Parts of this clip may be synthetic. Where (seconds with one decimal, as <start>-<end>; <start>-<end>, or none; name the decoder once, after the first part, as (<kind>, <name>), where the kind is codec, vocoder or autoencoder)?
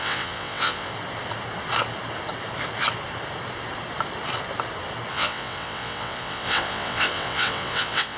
0.0-0.9 (vocoder, WaveNeXt); 5.1-8.2